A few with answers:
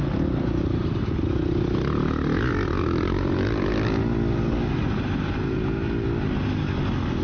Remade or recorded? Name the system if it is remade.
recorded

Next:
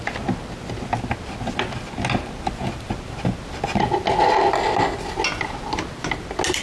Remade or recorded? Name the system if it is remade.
recorded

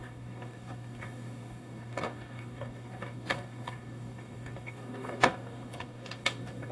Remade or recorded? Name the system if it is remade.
remade, codec, DAC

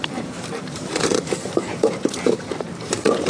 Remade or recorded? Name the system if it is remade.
remade, vocoder, BigVGAN v2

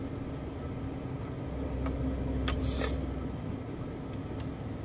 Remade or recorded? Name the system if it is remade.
recorded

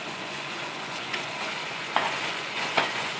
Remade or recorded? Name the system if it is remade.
remade, vocoder, Vocos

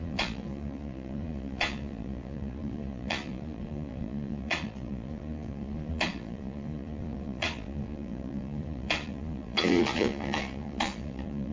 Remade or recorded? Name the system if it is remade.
remade, vocoder, Vocos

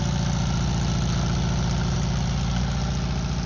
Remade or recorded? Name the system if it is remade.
recorded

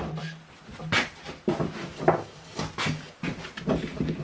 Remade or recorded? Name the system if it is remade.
recorded